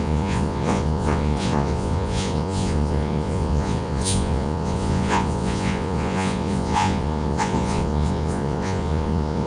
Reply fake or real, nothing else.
fake